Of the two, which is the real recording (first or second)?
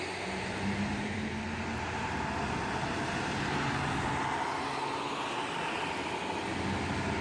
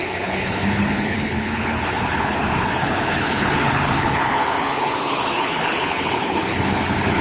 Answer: first